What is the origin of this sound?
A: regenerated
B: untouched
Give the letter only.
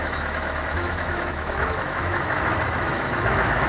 A